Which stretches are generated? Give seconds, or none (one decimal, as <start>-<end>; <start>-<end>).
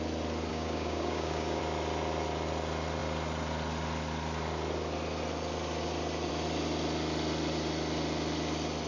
0.5-1.6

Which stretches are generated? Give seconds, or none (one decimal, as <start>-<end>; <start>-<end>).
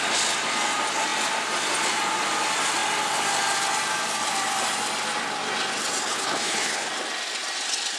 6.0-6.9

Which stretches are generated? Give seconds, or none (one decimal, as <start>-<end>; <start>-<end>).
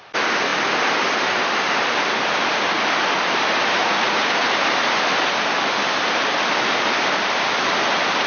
3.8-4.3